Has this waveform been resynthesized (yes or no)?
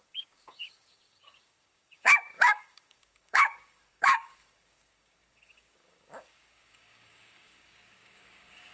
yes